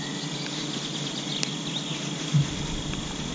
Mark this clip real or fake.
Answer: real